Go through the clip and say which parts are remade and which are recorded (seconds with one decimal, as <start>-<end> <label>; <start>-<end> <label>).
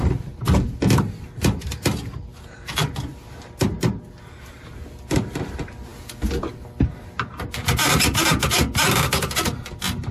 0.0-2.3 recorded; 2.3-3.9 remade; 3.9-10.1 recorded